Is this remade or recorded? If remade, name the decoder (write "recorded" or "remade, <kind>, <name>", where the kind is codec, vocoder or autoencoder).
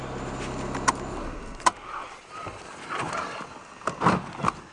recorded